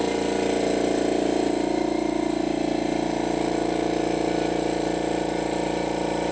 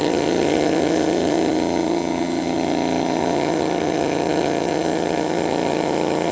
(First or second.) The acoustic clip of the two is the first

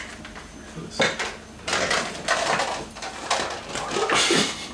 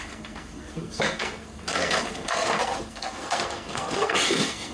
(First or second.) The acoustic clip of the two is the first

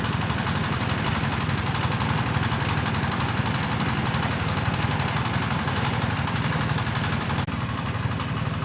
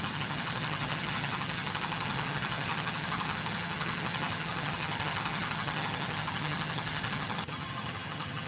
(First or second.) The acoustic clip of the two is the first